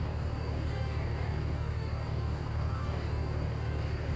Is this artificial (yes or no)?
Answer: yes